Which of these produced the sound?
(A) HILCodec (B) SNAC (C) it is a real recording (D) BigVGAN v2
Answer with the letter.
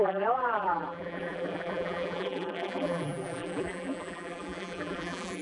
D